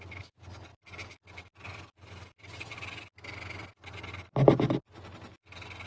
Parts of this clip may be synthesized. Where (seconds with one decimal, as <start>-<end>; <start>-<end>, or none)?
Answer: none